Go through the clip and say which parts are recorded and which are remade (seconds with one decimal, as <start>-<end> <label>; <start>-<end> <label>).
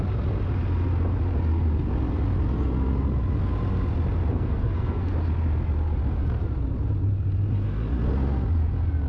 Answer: 0.0-4.3 recorded; 4.3-5.1 remade; 5.1-9.1 recorded